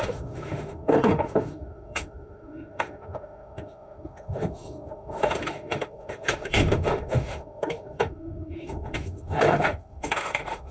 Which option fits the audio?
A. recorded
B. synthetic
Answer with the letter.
B